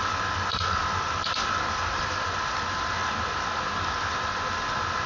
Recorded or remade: recorded